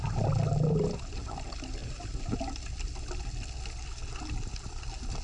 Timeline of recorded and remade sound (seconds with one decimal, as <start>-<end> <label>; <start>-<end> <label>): 0.0-1.8 recorded; 1.8-2.3 remade; 2.3-5.2 recorded